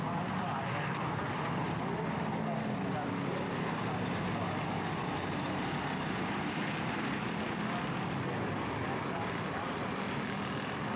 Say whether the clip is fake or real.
real